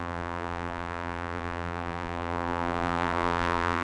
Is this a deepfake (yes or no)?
yes